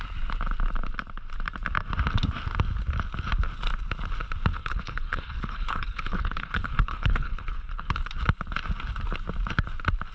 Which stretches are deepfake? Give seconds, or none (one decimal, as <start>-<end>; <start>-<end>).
4.5-8.0